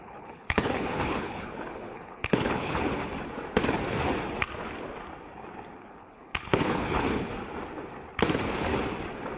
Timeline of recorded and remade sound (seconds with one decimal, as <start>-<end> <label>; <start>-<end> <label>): 0.0-3.0 remade; 3.0-5.8 recorded; 5.8-7.3 remade; 7.3-9.4 recorded